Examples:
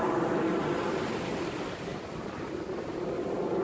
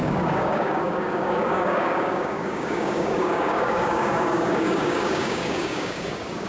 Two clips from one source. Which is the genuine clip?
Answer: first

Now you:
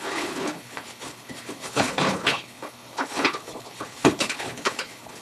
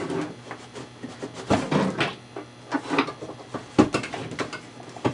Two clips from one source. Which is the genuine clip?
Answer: second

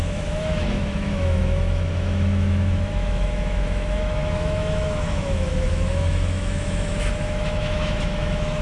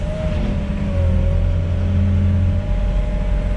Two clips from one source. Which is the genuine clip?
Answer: second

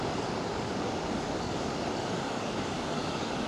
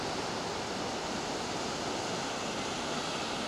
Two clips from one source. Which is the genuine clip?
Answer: second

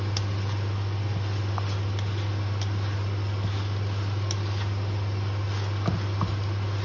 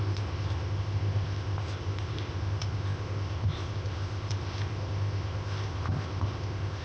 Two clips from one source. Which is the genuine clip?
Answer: first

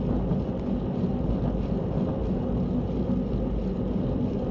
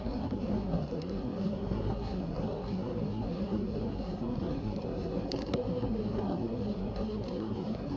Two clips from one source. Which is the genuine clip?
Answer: first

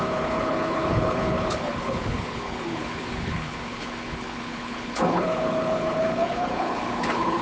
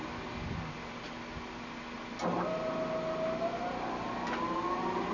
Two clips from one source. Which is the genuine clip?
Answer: second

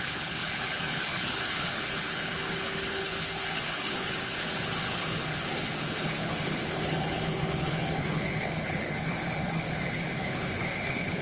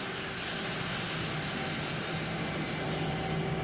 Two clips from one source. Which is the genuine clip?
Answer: second